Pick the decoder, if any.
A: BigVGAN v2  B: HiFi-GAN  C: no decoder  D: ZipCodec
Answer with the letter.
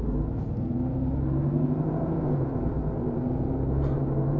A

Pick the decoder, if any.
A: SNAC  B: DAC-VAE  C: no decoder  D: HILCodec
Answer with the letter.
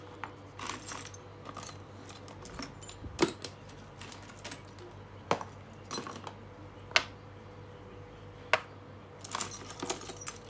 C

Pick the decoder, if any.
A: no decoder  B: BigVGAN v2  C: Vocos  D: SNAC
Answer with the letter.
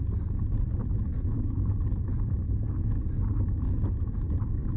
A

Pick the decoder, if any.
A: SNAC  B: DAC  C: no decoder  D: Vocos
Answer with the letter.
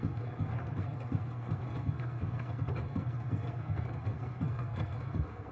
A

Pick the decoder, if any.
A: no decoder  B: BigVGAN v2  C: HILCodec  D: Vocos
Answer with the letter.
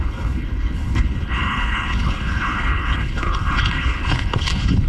C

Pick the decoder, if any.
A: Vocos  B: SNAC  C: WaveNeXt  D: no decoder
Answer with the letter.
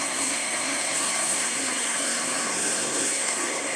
B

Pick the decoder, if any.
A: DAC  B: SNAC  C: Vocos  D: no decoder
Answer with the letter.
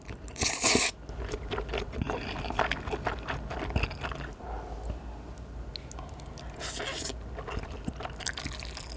D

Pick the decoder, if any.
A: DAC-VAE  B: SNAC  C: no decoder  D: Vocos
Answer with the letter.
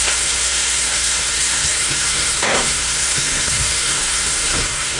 B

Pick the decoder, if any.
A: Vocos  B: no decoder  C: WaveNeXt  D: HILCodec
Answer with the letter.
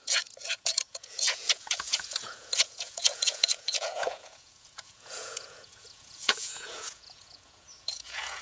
A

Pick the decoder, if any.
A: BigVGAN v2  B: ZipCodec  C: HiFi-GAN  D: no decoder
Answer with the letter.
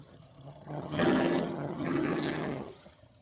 C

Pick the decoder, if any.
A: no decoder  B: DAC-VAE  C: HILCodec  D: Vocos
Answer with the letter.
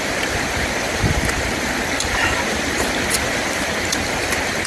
A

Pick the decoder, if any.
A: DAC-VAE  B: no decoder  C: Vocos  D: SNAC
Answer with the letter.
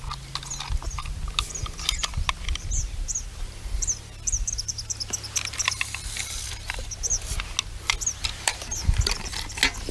B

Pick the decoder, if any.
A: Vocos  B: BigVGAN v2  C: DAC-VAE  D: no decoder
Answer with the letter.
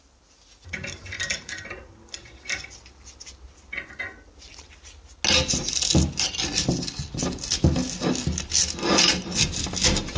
D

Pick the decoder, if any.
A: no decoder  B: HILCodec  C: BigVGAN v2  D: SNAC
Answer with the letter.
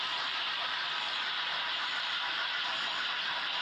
C